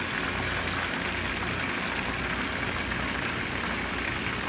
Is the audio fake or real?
real